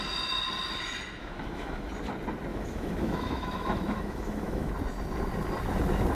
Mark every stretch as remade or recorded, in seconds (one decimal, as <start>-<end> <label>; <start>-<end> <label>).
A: 0.0-1.2 recorded; 1.2-1.9 remade; 1.9-2.5 recorded; 2.5-4.7 remade; 4.7-6.1 recorded